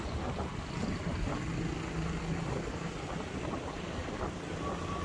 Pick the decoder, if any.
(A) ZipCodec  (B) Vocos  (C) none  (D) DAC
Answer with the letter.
C